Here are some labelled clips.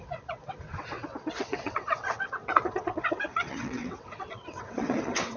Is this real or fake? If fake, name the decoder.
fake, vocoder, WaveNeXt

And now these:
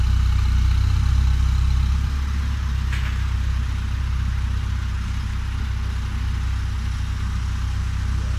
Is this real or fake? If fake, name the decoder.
real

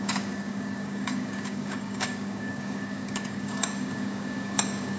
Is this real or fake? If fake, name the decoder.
fake, codec, DAC